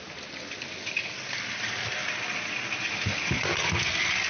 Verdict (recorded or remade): recorded